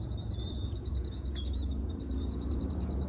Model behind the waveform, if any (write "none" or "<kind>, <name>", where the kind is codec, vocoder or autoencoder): vocoder, Vocos